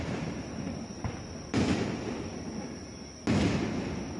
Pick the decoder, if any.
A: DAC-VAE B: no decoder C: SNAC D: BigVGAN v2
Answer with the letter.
B